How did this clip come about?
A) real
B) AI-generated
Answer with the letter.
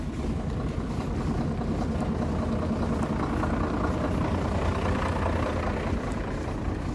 A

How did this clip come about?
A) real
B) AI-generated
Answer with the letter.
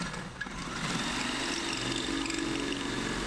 A